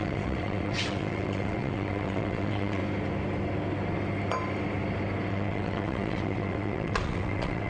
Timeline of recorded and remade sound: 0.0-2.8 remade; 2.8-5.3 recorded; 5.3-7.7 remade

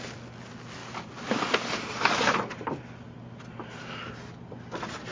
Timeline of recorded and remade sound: 0.0-5.1 recorded

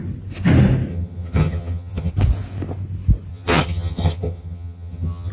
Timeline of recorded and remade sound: 0.0-0.9 recorded; 0.9-2.1 remade; 2.1-3.3 recorded; 3.3-5.3 remade

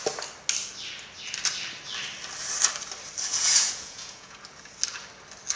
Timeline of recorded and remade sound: 0.0-3.3 recorded; 3.3-4.4 remade; 4.4-5.6 recorded

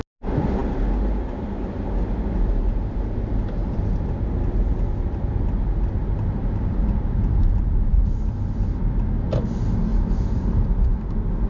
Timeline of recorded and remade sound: 0.0-6.4 recorded; 6.4-8.3 remade; 8.3-9.9 recorded; 9.9-10.6 remade; 10.6-11.5 recorded

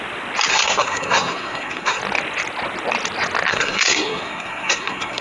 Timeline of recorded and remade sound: 0.0-0.5 recorded; 0.5-2.0 remade; 2.0-3.5 recorded; 3.5-5.2 remade

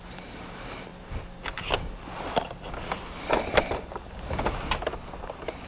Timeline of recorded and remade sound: 0.0-5.7 recorded